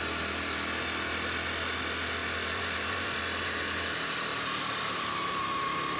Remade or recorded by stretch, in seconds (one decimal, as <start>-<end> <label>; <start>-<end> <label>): 0.0-2.2 recorded; 2.2-3.2 remade; 3.2-4.3 recorded; 4.3-5.2 remade; 5.2-6.0 recorded